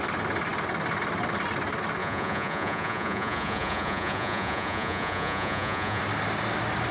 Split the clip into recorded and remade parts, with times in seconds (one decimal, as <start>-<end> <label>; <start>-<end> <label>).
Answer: 0.0-2.0 recorded; 2.0-6.0 remade; 6.0-6.9 recorded